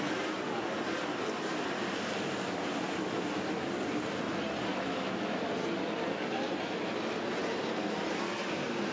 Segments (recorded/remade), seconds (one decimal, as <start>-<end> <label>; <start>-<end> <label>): 0.0-4.7 recorded; 4.7-5.4 remade; 5.4-8.9 recorded